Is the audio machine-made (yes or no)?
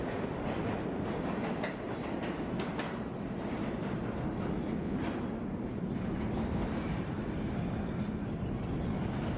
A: no